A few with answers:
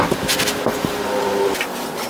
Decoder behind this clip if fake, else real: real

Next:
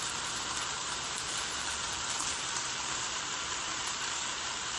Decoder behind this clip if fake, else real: fake, vocoder, BigVGAN v2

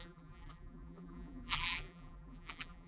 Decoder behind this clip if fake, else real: fake, vocoder, BigVGAN v2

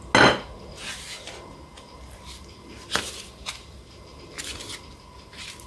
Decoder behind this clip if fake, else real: real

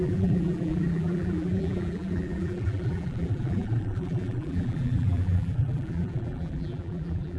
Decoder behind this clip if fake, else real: fake, vocoder, BigVGAN v2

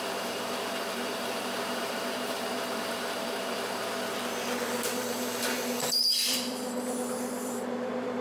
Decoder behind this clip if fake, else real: fake, vocoder, BigVGAN v2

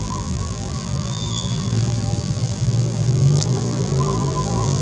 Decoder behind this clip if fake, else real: fake, vocoder, BigVGAN v2